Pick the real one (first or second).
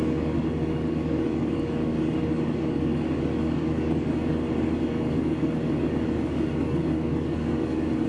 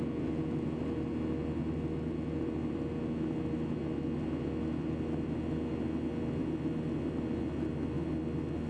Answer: second